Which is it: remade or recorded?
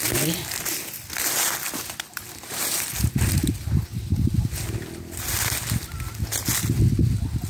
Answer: recorded